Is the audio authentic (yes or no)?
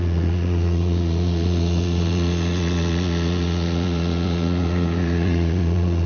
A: no